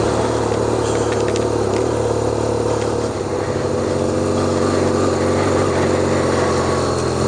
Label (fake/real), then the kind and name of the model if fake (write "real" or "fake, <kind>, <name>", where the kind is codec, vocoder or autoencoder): real